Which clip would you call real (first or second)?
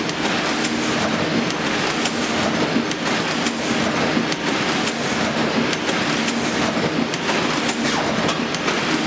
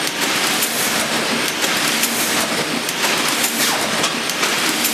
first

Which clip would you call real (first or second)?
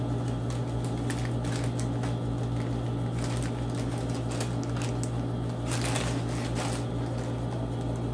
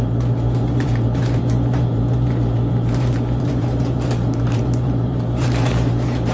first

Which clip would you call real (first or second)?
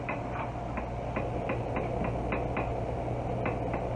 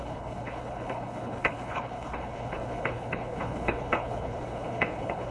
first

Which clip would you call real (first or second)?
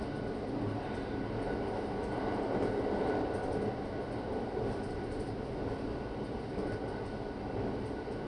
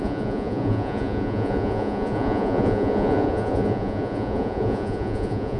first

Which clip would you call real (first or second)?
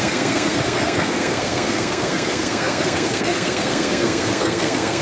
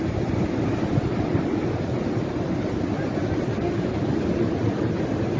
second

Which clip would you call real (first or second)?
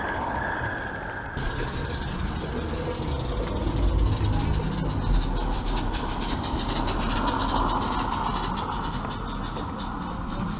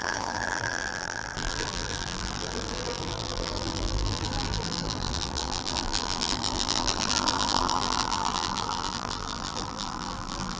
first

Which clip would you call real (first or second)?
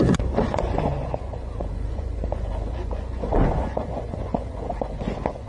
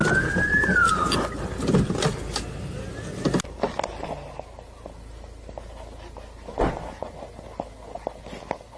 second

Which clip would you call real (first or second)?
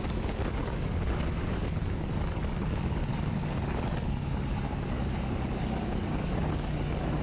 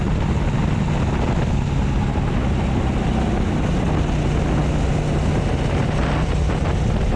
second